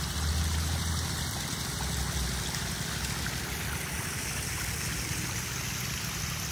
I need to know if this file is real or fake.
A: real